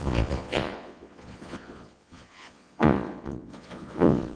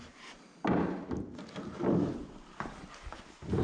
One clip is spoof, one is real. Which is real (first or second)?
second